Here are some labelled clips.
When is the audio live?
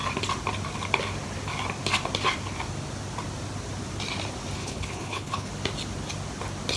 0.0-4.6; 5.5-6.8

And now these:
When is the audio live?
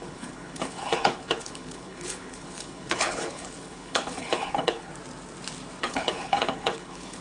4.9-5.8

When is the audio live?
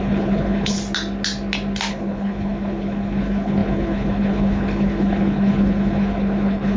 0.8-1.9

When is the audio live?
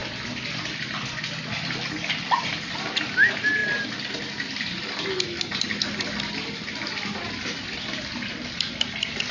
0.0-9.3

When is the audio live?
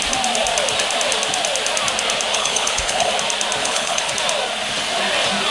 0.0-2.3; 3.1-3.6; 4.1-5.5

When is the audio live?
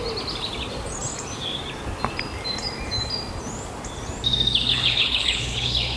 0.0-4.7